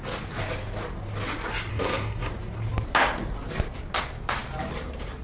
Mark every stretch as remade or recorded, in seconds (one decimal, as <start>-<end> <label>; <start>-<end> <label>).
0.0-1.7 recorded; 1.7-2.3 remade; 2.3-5.2 recorded